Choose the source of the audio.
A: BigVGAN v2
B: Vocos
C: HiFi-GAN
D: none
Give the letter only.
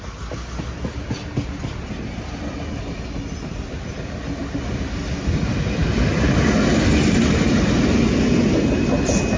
D